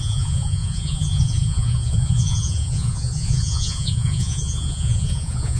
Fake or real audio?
fake